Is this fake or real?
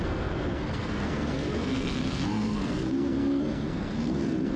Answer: fake